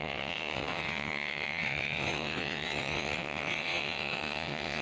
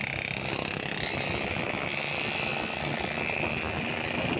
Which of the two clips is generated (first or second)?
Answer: first